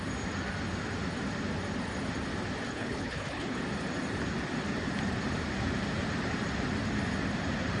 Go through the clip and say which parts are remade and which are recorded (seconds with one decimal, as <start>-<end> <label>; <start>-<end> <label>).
0.0-2.7 recorded; 2.7-3.6 remade; 3.6-7.8 recorded